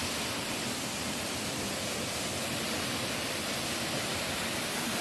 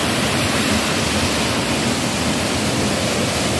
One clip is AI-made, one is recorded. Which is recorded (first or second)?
second